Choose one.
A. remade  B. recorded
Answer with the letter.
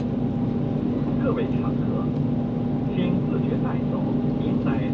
B